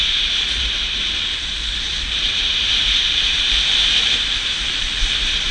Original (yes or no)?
no